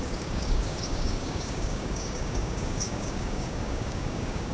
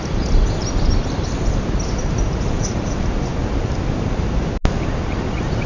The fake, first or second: first